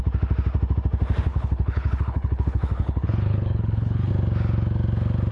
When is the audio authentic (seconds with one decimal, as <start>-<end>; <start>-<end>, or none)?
0.0-1.3; 4.1-5.3